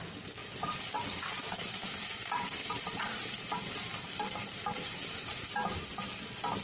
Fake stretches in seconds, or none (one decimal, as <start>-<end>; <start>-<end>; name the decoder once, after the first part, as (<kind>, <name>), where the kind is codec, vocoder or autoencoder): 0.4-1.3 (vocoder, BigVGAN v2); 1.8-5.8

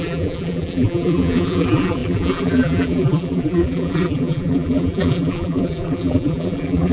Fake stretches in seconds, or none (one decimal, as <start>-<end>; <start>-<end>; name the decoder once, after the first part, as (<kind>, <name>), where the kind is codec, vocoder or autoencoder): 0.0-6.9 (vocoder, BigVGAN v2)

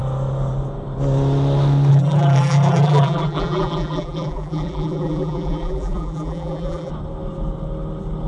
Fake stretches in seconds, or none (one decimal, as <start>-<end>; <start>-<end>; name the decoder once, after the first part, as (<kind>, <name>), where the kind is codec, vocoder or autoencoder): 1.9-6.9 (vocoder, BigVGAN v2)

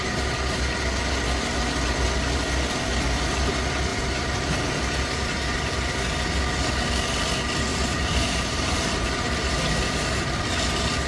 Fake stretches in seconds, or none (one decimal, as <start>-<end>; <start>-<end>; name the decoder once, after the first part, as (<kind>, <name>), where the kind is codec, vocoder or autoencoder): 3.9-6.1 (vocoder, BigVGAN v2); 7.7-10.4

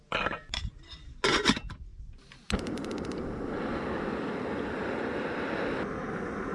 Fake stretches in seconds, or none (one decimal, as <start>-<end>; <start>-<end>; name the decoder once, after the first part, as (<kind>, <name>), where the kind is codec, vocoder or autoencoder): none